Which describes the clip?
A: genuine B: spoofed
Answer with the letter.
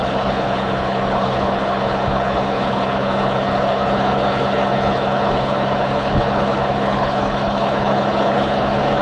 B